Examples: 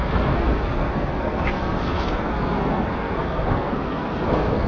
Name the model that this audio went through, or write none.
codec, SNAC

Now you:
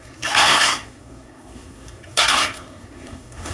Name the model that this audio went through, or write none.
codec, SNAC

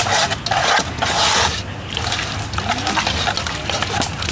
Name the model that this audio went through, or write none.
none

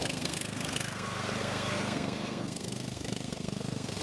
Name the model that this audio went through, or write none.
codec, SNAC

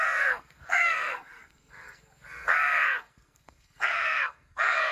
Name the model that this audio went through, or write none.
codec, SNAC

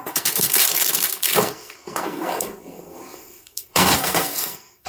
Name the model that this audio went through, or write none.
codec, SNAC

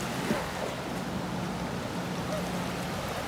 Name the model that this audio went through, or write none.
none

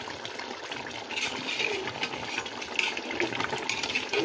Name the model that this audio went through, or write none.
none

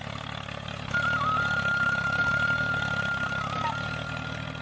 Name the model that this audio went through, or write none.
none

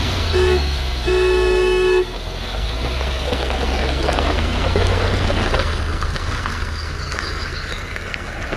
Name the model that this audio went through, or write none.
codec, SNAC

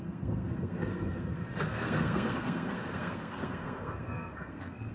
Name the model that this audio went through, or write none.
codec, SNAC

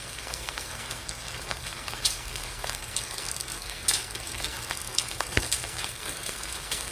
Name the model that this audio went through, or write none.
codec, SNAC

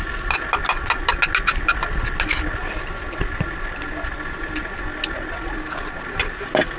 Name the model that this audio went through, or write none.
none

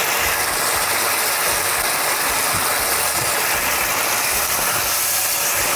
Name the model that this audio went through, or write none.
none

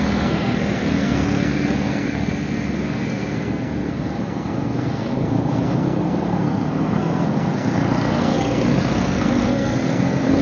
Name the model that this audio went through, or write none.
codec, SNAC